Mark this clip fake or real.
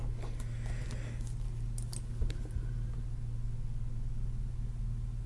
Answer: real